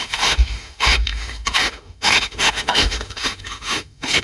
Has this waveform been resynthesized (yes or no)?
yes